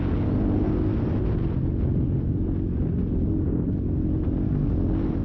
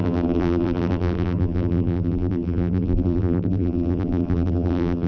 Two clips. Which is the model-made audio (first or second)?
second